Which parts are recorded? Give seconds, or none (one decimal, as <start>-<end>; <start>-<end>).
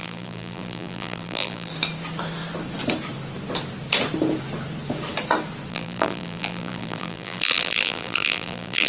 1.7-5.7